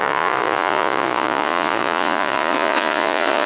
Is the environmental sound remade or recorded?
remade